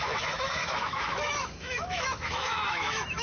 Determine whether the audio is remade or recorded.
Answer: remade